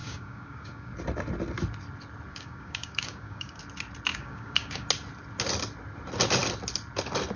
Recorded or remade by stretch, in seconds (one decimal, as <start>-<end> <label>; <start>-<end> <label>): 0.0-0.9 remade; 0.9-2.3 recorded; 2.3-3.6 remade; 3.6-4.1 recorded; 4.1-4.9 remade; 4.9-7.4 recorded